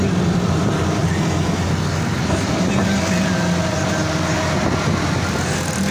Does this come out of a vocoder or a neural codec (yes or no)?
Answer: no